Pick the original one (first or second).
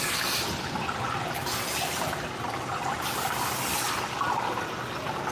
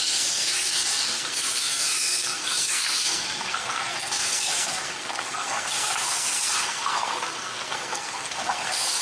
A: first